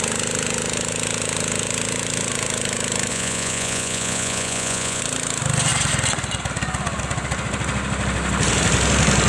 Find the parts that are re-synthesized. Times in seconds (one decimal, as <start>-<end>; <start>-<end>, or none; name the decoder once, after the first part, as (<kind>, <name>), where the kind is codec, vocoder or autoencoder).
3.1-5.0 (vocoder, Vocos)